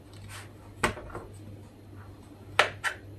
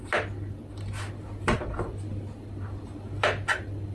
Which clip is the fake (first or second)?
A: second